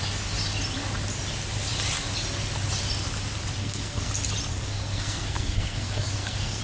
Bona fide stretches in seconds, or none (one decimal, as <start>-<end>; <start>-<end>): 0.0-3.6; 4.1-4.5